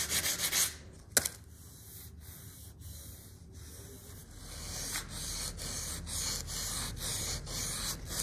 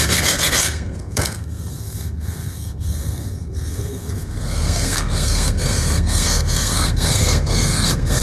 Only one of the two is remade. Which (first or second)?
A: second